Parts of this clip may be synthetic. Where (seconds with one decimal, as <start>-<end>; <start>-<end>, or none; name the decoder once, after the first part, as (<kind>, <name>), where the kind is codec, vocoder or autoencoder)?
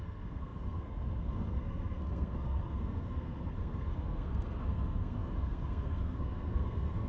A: 0.0-7.1 (codec, SNAC)